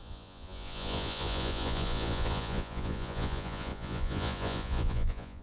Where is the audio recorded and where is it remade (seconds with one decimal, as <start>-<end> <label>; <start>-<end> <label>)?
0.0-5.4 remade